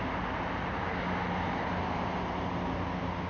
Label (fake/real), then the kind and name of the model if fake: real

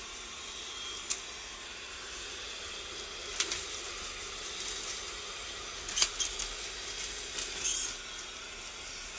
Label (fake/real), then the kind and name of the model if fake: real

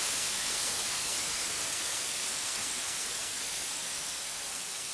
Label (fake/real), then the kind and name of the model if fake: fake, codec, SNAC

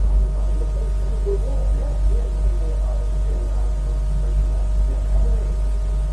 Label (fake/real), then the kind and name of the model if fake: real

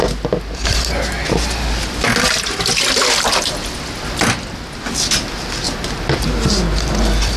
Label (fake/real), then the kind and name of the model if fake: real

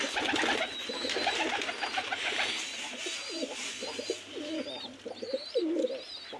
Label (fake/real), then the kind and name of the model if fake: real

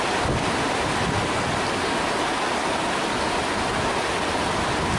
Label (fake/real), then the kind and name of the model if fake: real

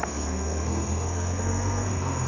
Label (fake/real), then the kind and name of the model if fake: fake, codec, SNAC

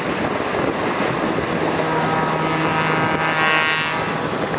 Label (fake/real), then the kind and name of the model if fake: real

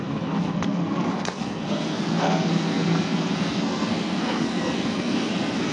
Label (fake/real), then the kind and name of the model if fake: fake, codec, SNAC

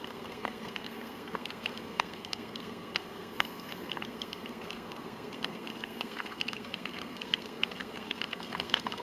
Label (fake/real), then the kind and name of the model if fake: fake, codec, SNAC